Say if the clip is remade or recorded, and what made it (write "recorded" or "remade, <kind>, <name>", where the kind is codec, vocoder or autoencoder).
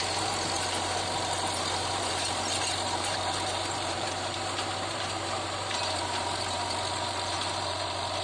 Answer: remade, vocoder, BigVGAN v2